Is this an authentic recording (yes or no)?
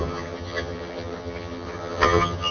no